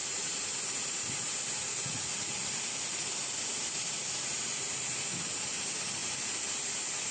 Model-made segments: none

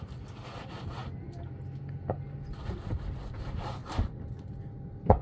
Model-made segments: 3.8-4.6 (vocoder, BigVGAN v2)

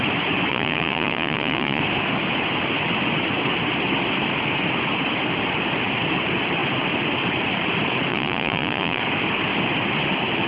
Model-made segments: 0.5-1.8 (vocoder, Vocos); 8.1-9.0

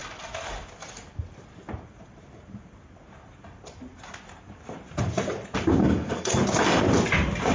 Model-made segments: 5.8-6.4 (codec, SNAC)

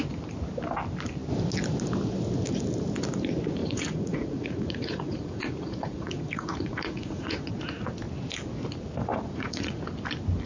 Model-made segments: 3.6-7.5 (vocoder, Vocos); 9.1-9.8

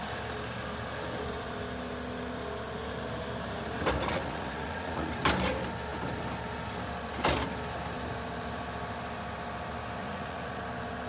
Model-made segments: 4.1-5.1 (vocoder, Vocos); 10.0-10.6

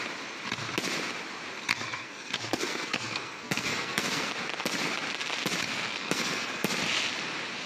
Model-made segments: 1.7-4.3 (codec, SNAC); 5.7-6.7